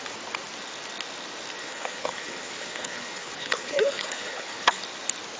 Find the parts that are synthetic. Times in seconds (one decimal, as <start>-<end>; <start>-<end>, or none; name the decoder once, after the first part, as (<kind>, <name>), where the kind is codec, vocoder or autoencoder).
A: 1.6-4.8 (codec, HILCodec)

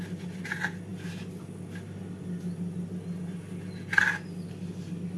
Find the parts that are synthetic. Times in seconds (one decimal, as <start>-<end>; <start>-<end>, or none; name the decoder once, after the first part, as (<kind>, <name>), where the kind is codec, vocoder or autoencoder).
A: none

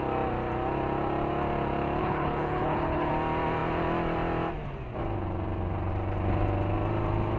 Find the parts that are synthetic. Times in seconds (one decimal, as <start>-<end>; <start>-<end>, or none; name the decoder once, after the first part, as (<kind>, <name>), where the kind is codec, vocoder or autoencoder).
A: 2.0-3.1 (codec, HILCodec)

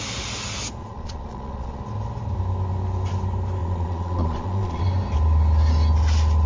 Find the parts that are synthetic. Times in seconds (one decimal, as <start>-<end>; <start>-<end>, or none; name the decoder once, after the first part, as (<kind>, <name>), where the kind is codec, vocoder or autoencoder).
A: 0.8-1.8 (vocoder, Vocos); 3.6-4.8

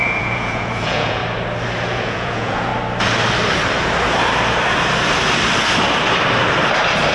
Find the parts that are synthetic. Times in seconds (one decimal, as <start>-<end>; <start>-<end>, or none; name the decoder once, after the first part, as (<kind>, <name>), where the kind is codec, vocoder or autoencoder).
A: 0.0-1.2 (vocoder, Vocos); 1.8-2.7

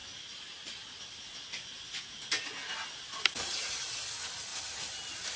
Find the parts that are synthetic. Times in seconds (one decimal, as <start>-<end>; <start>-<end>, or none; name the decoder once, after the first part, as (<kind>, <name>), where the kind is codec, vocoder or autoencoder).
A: none